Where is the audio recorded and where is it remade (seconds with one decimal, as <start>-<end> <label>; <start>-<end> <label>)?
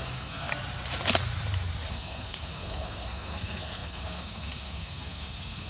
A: 0.0-0.5 remade; 0.5-1.9 recorded; 1.9-5.7 remade